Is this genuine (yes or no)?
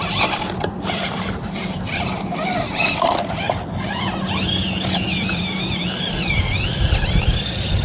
no